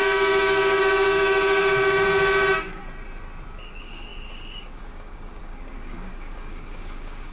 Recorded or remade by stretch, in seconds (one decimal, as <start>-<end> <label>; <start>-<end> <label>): 0.0-2.8 remade; 2.8-3.6 recorded; 3.6-7.3 remade